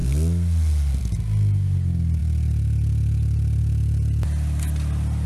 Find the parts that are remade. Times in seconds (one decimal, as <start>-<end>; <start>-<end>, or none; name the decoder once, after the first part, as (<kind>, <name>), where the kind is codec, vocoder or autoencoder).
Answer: none